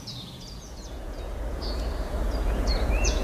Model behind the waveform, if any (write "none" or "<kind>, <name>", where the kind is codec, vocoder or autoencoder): vocoder, Vocos